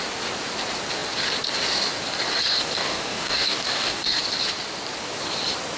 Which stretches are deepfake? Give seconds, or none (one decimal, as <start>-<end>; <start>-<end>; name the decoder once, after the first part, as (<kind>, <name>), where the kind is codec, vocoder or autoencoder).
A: 2.5-4.2 (codec, DAC)